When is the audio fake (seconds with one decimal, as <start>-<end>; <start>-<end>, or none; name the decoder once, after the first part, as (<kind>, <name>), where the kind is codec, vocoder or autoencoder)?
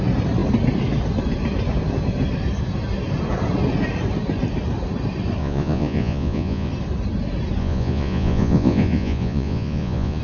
5.4-6.7 (vocoder, Vocos); 7.6-10.2